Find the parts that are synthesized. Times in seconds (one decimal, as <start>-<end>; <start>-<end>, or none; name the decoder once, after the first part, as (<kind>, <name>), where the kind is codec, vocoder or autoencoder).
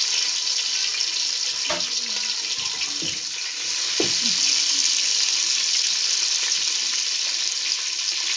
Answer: none